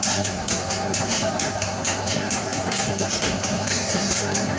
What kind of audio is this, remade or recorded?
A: remade